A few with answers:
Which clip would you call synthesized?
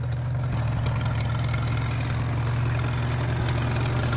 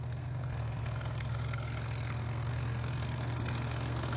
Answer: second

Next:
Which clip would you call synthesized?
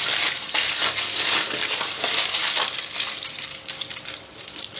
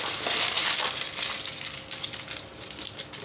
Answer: first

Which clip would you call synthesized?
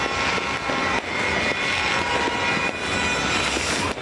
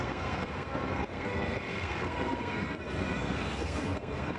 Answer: second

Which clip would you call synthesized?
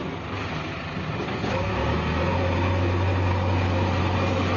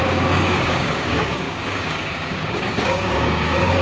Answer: second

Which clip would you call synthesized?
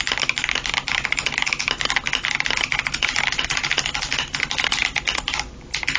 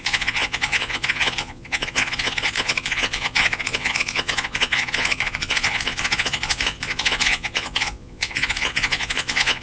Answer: second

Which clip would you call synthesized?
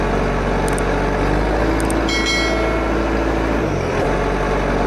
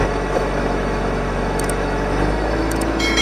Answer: second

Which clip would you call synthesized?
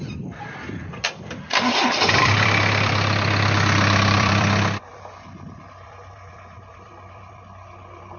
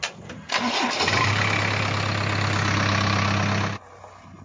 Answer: first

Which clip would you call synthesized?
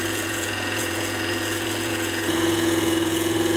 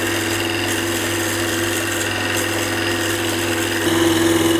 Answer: first